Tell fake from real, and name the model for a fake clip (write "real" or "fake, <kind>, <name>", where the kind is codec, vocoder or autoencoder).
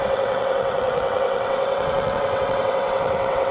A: fake, vocoder, WaveNeXt